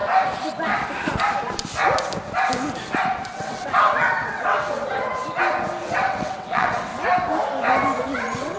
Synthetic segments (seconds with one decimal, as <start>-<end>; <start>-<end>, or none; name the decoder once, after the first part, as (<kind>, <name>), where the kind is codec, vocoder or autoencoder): 3.3-4.8 (vocoder, WaveNeXt); 5.8-6.9; 8.0-8.6